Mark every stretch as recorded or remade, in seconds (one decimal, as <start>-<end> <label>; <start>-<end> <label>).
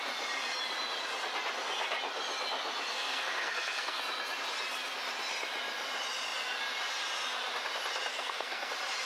0.0-2.9 recorded; 2.9-4.0 remade; 4.0-8.1 recorded; 8.1-8.7 remade; 8.7-9.1 recorded